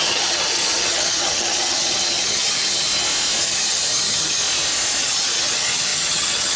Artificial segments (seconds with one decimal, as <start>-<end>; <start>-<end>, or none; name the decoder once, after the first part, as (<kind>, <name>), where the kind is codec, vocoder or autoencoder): 0.0-2.9 (vocoder, HiFi-GAN); 3.4-4.4; 5.0-6.6